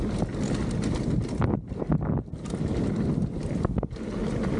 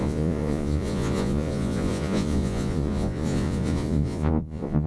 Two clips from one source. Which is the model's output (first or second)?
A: second